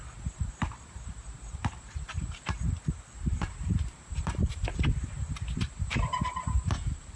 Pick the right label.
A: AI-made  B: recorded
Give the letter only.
A